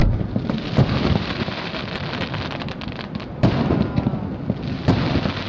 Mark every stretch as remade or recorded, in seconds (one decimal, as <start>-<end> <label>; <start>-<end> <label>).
0.0-1.7 remade; 1.7-5.5 recorded

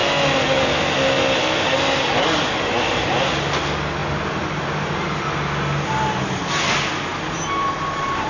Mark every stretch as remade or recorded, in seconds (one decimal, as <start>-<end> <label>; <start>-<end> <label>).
0.0-8.3 recorded

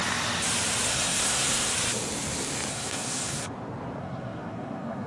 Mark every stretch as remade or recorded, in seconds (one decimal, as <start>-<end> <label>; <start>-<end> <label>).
0.0-0.9 recorded; 0.9-1.7 remade; 1.7-2.7 recorded; 2.7-3.5 remade; 3.5-4.0 recorded; 4.0-5.1 remade

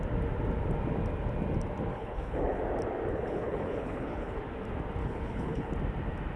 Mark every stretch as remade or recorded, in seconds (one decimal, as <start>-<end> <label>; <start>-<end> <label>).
0.0-1.9 recorded; 1.9-2.6 remade; 2.6-3.1 recorded; 3.1-4.4 remade; 4.4-5.0 recorded; 5.0-5.7 remade; 5.7-6.4 recorded

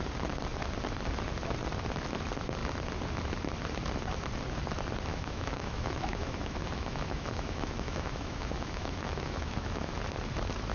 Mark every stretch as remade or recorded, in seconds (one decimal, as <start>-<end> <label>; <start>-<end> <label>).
0.0-5.1 recorded; 5.1-9.9 remade; 9.9-10.7 recorded

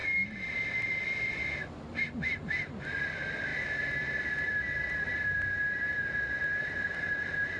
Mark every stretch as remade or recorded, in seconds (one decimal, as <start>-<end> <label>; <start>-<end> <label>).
0.0-2.8 recorded; 2.8-3.5 remade; 3.5-4.1 recorded; 4.1-5.1 remade; 5.1-6.8 recorded; 6.8-7.6 remade

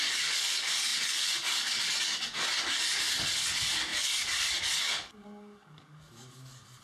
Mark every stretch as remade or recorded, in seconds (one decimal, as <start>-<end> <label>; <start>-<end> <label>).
0.0-6.8 remade